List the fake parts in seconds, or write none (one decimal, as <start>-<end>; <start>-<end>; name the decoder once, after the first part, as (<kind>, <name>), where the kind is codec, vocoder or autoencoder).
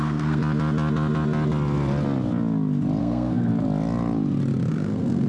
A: 0.0-0.4 (codec, SNAC); 3.0-3.5; 4.7-5.3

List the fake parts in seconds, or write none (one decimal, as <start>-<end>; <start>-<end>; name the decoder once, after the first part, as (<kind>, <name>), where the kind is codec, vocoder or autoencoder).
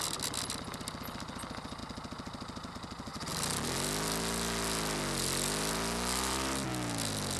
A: none